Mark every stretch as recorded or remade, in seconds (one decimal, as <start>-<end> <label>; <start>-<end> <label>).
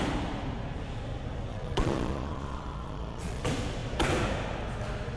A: 0.0-1.5 recorded; 1.5-3.4 remade; 3.4-5.2 recorded